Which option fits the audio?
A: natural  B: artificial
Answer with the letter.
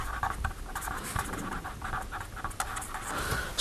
A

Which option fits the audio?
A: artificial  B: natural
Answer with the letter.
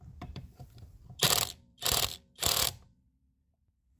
A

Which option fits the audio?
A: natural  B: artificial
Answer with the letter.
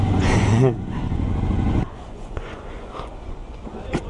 B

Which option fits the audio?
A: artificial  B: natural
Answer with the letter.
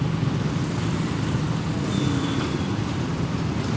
B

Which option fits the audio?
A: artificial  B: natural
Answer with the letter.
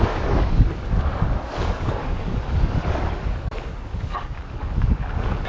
A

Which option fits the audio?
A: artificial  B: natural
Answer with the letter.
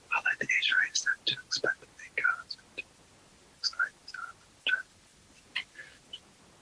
B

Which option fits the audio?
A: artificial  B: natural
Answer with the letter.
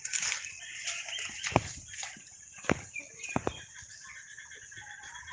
B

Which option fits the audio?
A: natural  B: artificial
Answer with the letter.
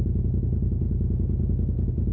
A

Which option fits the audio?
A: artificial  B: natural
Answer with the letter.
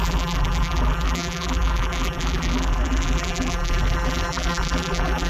A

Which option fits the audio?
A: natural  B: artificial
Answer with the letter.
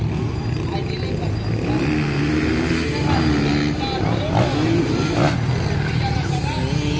A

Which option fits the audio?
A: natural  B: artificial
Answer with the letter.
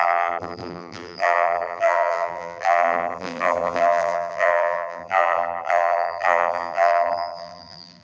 B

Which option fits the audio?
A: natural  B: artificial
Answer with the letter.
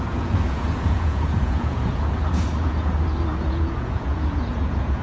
B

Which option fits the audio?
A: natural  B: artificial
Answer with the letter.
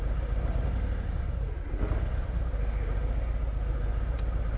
A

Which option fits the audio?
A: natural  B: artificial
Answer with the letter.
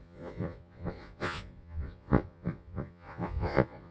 B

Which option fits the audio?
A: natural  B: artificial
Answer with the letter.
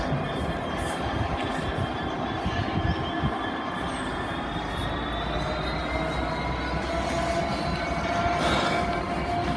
A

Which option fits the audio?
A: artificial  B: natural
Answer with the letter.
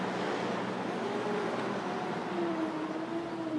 B